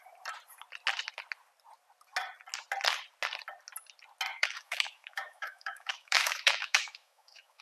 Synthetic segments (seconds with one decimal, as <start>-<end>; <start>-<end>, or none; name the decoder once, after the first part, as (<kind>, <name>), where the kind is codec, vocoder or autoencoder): 4.3-7.6 (autoencoder, DAC-VAE)